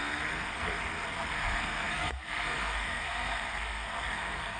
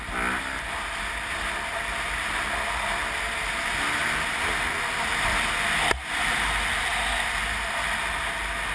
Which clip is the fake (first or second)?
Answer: first